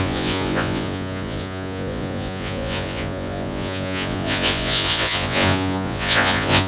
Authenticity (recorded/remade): remade